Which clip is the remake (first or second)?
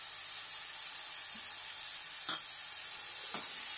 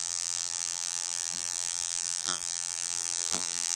second